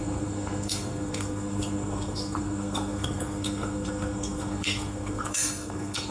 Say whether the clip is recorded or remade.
remade